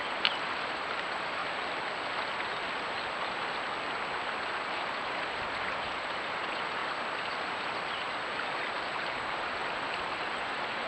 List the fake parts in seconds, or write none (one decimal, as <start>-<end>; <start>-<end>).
0.0-1.4; 4.7-6.8; 8.8-10.9